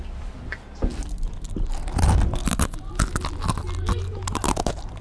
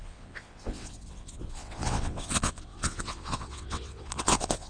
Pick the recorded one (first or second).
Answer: first